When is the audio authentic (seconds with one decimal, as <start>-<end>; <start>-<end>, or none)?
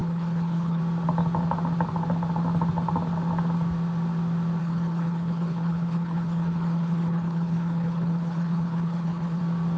0.8-4.6; 9.4-9.8